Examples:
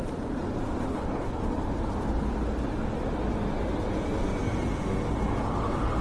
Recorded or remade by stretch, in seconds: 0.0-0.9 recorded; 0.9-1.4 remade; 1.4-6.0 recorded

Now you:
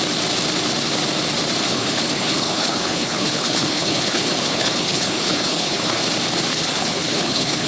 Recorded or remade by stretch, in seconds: 0.0-1.7 recorded; 1.7-6.0 remade; 6.0-6.5 recorded; 6.5-7.7 remade

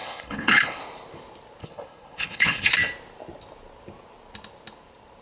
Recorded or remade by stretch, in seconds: 0.0-0.8 remade; 0.8-1.6 recorded; 1.6-2.7 remade; 2.7-5.2 recorded

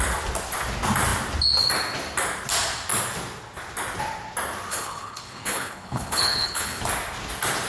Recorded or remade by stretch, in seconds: 0.0-4.7 recorded; 4.7-6.8 remade; 6.8-7.7 recorded

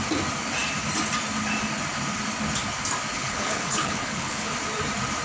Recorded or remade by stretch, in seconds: 0.0-3.1 recorded; 3.1-4.5 remade; 4.5-5.2 recorded